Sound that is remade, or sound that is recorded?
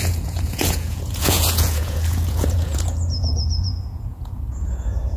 remade